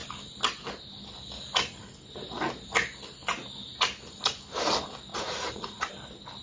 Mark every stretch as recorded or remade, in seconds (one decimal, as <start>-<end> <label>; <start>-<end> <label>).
0.0-5.1 recorded; 5.1-5.9 remade; 5.9-6.4 recorded